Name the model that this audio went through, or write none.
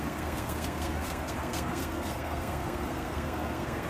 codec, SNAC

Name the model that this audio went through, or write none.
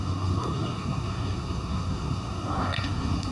codec, SNAC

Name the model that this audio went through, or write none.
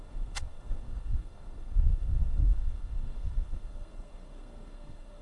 codec, SNAC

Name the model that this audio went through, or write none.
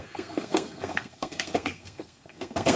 codec, SNAC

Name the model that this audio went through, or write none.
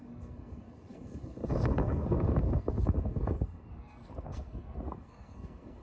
codec, SNAC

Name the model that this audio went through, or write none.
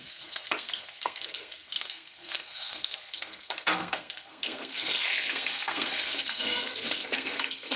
codec, SNAC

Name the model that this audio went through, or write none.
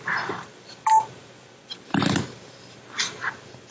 none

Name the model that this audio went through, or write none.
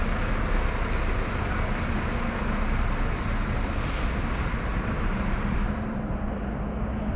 none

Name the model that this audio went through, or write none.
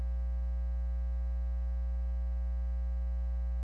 none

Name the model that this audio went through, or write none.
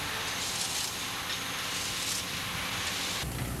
none